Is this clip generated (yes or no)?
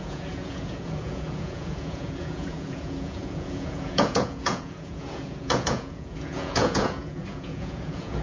yes